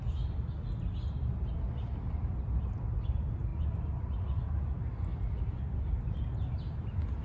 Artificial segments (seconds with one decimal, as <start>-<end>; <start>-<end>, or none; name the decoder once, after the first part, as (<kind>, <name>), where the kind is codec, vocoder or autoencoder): 5.1-5.6 (vocoder, BigVGAN v2)